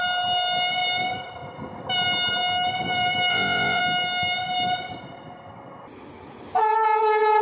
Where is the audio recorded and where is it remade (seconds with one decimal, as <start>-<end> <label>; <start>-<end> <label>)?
0.0-3.3 recorded; 3.3-3.8 remade; 3.8-7.4 recorded